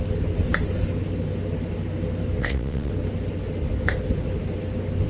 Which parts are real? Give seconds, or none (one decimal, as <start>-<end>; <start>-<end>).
0.0-2.4; 2.9-5.1